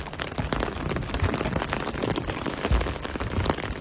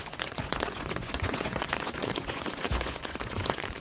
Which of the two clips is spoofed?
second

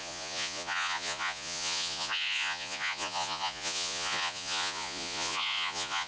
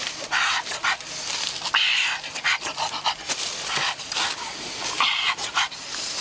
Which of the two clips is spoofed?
first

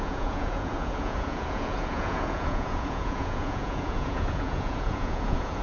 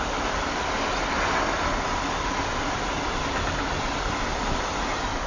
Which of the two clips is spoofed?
first